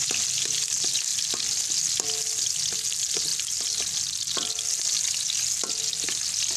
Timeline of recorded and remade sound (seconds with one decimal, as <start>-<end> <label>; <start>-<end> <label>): 0.0-6.6 recorded